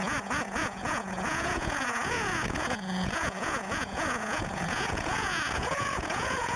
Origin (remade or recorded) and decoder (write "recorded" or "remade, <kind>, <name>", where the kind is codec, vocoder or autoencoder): remade, vocoder, Vocos